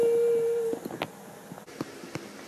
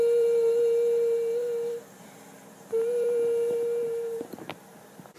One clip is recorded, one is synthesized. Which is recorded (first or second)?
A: first